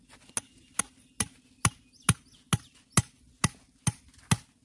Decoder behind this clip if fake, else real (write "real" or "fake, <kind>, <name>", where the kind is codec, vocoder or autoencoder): real